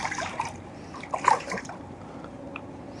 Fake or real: fake